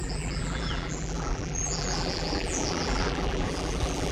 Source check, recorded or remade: remade